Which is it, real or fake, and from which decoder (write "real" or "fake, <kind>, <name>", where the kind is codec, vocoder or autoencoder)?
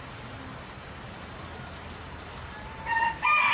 real